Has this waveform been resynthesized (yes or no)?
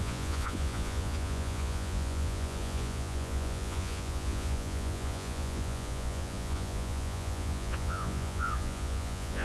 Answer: yes